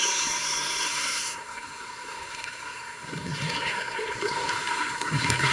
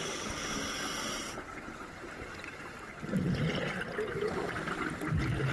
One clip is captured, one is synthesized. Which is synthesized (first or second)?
first